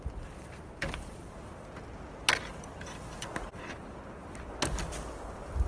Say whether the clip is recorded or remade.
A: recorded